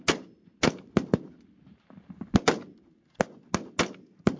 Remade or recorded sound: recorded